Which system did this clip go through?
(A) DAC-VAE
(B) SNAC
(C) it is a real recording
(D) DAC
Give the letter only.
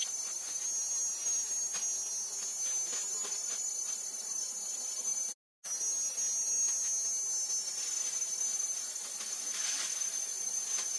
C